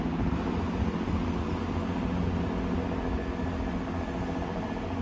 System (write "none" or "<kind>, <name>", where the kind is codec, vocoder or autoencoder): none